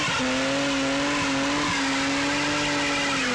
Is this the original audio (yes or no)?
yes